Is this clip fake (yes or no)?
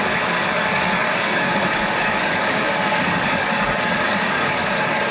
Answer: yes